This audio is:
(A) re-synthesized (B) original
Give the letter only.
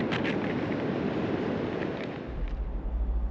B